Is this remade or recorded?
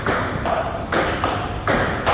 remade